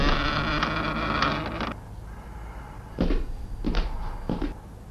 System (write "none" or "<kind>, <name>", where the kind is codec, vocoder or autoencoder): none